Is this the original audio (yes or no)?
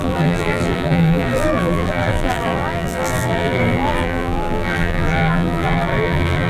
no